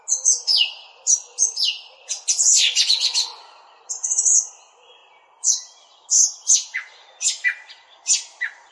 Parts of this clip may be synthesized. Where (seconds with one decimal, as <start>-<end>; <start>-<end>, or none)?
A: none